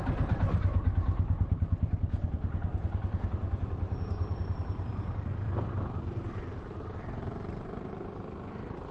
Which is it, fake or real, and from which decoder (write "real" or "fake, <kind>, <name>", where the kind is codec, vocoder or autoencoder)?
fake, vocoder, BigVGAN v2